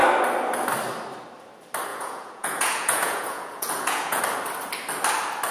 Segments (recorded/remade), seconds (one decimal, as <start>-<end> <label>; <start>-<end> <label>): 0.0-1.9 recorded; 1.9-4.2 remade; 4.2-5.5 recorded